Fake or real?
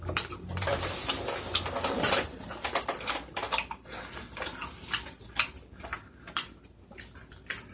fake